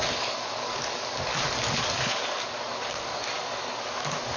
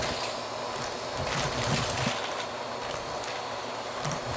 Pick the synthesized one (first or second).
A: first